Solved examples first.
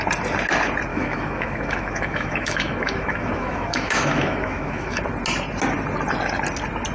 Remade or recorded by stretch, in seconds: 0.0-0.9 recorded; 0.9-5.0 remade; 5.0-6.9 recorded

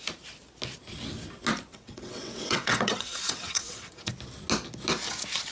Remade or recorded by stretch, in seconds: 0.0-1.7 recorded; 1.7-4.1 remade; 4.1-5.5 recorded

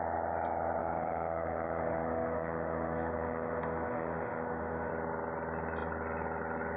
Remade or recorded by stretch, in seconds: 0.0-0.8 recorded; 0.8-4.9 remade; 4.9-6.8 recorded

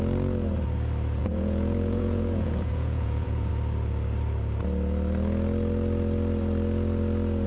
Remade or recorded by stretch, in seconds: 0.0-1.2 recorded; 1.2-3.5 remade; 3.5-7.5 recorded

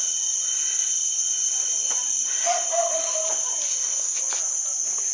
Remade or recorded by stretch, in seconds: 0.0-3.7 recorded; 3.7-4.2 remade; 4.2-5.1 recorded

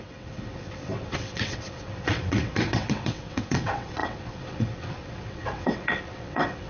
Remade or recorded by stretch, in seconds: 0.0-6.7 remade

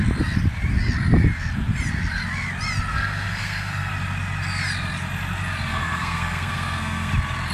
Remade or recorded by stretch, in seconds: 0.0-2.9 recorded; 2.9-3.9 remade; 3.9-5.7 recorded; 5.7-7.1 remade; 7.1-7.5 recorded